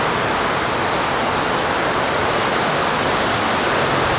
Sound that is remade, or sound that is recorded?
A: recorded